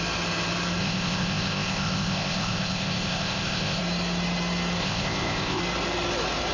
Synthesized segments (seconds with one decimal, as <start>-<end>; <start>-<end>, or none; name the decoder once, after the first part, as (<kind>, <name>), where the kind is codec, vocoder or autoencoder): 0.8-3.8 (codec, ZipCodec); 4.8-5.6